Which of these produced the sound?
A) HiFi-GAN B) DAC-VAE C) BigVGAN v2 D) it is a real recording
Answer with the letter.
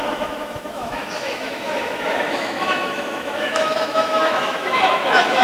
B